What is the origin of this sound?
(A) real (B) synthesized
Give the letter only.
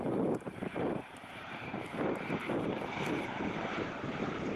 B